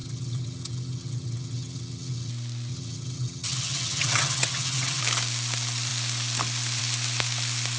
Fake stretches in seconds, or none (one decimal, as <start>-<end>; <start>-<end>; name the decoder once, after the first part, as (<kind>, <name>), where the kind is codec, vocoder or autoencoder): 0.0-2.3 (vocoder, HiFi-GAN); 2.7-5.0

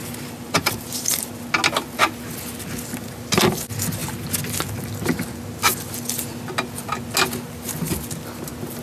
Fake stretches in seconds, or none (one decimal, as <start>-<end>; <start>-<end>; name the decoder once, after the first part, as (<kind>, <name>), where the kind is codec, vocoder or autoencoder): 0.0-1.3 (vocoder, BigVGAN v2)

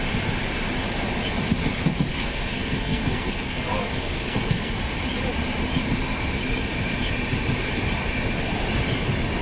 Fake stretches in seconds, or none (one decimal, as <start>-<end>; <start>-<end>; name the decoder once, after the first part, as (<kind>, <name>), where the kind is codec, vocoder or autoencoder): 2.1-4.8 (codec, SNAC)

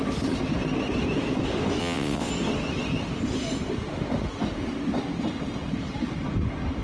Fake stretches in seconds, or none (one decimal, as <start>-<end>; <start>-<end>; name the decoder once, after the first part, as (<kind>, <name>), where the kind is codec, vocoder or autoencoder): 1.8-2.3 (vocoder, WaveNeXt)

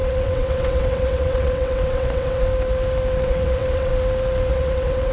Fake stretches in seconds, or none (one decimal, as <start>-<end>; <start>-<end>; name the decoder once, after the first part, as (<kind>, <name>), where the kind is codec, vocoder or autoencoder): 0.0-2.5 (vocoder, WaveNeXt); 3.2-3.9; 4.5-5.1

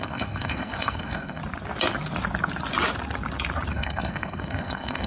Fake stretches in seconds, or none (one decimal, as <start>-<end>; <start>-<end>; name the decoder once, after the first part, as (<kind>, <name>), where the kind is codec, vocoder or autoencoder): 0.0-1.4 (codec, SNAC); 3.7-5.1